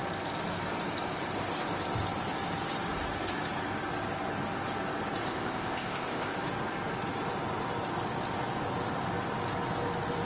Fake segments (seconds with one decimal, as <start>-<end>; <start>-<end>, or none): 5.2-6.3